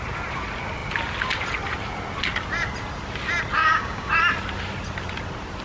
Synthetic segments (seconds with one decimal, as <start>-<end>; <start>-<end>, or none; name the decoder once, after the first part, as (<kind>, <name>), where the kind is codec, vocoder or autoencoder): 3.6-4.1 (codec, DAC)